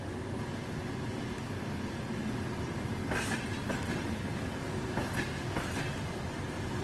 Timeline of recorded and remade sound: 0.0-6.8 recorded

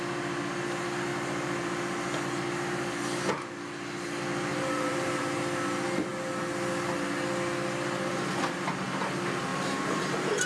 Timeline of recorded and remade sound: 0.0-4.5 recorded; 4.5-5.2 remade; 5.2-9.5 recorded; 9.5-10.5 remade

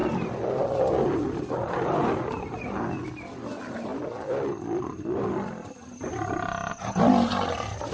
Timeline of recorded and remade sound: 0.0-7.9 recorded

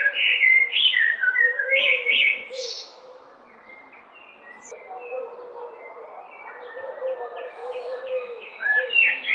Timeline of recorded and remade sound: 0.0-0.7 recorded; 0.7-3.0 remade; 3.0-7.6 recorded; 7.6-8.9 remade; 8.9-9.3 recorded